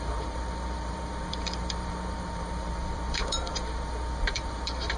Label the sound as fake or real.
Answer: fake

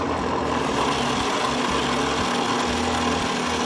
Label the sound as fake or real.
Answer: real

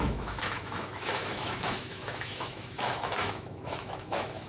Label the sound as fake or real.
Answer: fake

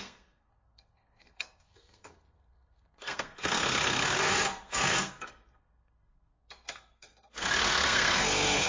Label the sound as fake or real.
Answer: fake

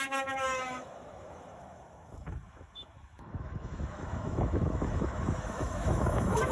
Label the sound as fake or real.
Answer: fake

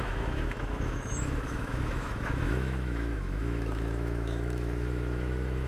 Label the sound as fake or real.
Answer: fake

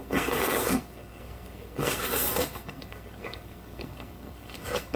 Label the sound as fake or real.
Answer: fake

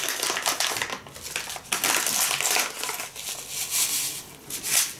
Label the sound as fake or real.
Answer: real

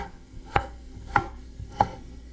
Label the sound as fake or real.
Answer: fake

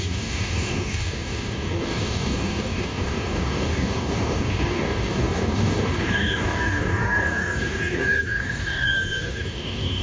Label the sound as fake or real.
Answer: fake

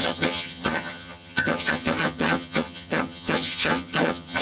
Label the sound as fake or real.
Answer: fake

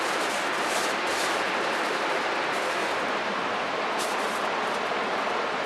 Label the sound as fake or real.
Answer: real